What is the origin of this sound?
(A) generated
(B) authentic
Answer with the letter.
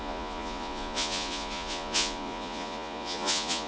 A